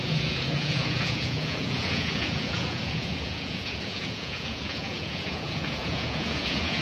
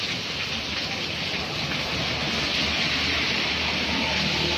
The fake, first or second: first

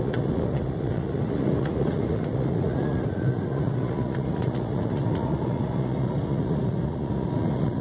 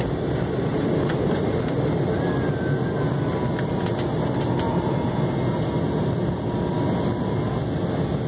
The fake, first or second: first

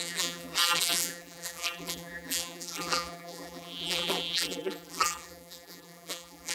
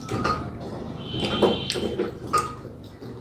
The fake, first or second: first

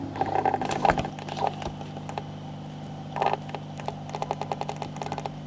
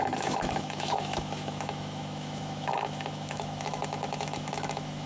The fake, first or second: second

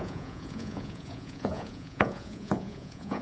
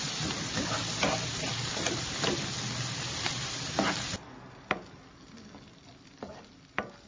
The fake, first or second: first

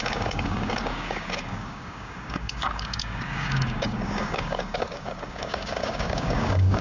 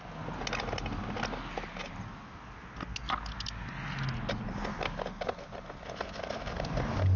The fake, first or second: first